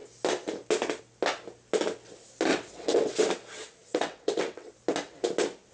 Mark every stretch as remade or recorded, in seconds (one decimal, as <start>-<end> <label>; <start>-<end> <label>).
0.0-2.5 recorded; 2.5-3.2 remade; 3.2-3.8 recorded; 3.8-4.7 remade; 4.7-5.7 recorded